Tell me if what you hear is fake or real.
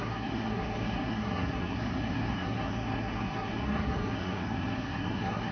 fake